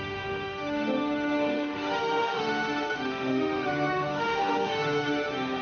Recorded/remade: remade